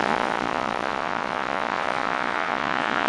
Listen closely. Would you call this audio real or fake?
fake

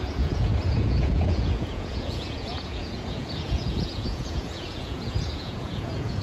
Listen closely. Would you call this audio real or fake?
fake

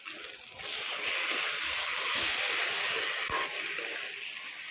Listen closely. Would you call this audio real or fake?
real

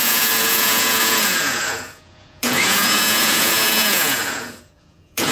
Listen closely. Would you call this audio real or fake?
fake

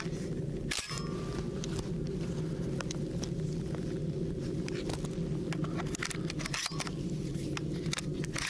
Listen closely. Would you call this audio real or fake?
real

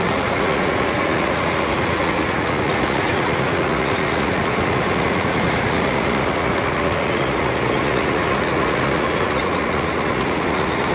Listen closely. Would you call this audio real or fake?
fake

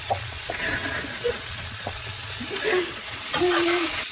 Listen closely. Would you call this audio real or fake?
fake